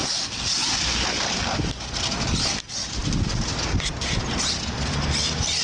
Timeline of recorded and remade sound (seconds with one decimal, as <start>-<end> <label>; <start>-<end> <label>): 0.0-5.6 recorded